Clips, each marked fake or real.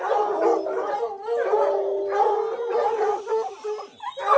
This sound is real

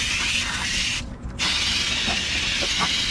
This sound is real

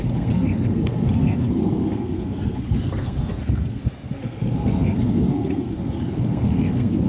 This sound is fake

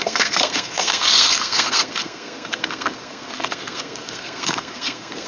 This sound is fake